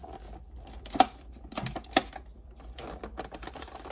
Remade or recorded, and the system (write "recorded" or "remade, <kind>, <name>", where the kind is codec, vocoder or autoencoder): recorded